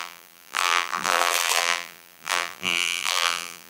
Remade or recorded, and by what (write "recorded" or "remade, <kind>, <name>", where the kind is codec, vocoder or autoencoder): remade, vocoder, BigVGAN v2